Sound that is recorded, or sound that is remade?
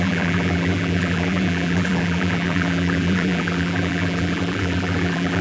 remade